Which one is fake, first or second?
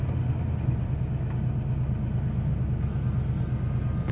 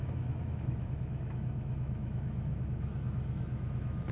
second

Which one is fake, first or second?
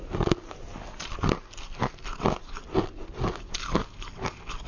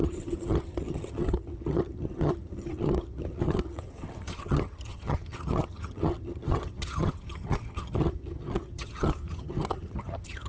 second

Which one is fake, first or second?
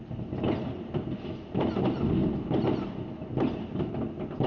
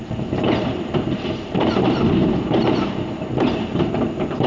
second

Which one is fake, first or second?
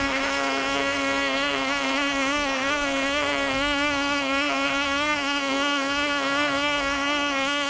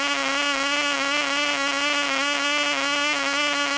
first